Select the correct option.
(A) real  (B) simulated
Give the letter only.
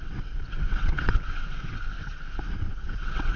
B